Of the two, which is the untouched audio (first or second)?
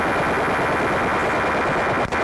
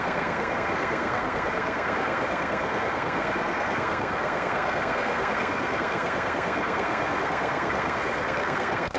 first